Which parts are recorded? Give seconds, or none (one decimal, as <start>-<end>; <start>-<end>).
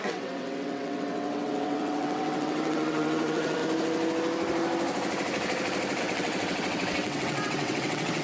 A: 3.6-6.0